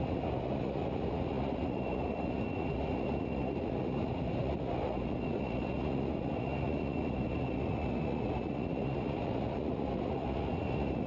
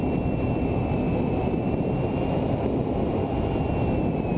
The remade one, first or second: first